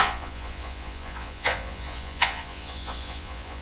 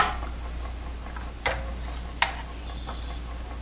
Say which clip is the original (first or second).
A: second